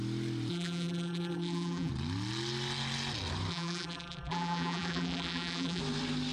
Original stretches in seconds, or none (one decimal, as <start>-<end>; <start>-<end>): 0.0-0.5; 1.9-3.5; 5.8-6.3